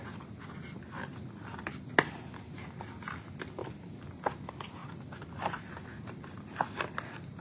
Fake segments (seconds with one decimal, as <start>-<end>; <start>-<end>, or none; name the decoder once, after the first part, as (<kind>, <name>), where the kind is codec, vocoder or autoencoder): 3.6-4.2 (vocoder, BigVGAN v2); 4.8-5.8